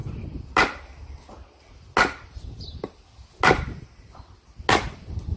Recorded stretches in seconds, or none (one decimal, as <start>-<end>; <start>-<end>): 0.0-5.4